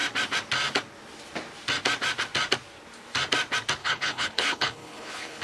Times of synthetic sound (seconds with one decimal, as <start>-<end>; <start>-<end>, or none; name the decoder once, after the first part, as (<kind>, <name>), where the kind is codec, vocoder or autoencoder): 3.8-5.4 (codec, HILCodec)